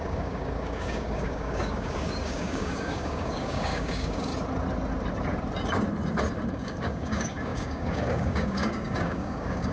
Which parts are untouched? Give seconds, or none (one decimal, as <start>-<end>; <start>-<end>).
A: 4.3-6.5